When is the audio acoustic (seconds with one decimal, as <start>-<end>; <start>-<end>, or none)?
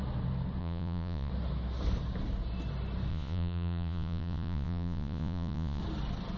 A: 0.0-0.6; 1.3-3.1; 5.8-6.4